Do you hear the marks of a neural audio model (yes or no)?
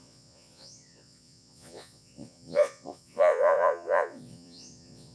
yes